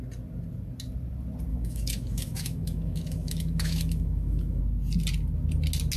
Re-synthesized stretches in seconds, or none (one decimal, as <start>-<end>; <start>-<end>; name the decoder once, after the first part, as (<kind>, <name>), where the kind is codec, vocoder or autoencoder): 1.5-4.6 (autoencoder, DAC-VAE)